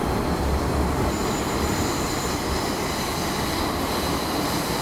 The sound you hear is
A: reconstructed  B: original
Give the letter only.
A